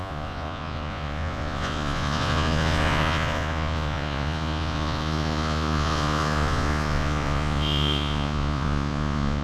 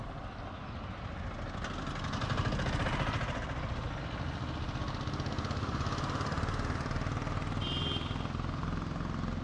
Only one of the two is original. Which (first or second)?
second